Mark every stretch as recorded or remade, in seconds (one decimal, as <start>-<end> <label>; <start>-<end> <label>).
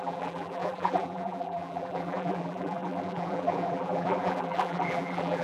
0.0-5.4 remade